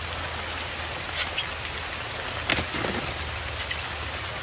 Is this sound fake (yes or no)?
no